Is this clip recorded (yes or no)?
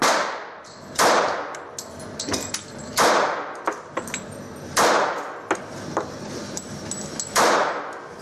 yes